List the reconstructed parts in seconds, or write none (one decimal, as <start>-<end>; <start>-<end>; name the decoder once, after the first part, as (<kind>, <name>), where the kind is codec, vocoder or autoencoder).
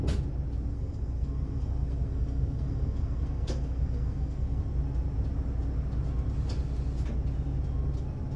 0.7-4.6 (codec, SNAC)